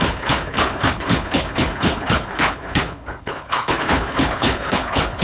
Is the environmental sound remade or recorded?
remade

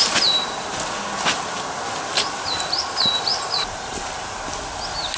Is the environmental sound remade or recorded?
recorded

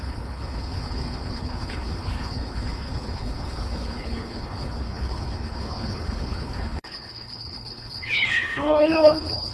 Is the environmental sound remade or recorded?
remade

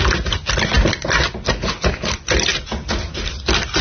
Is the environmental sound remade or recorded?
recorded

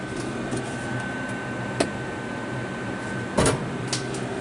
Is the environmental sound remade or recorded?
recorded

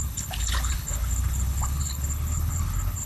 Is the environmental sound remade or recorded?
remade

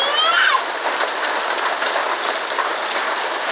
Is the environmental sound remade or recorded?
recorded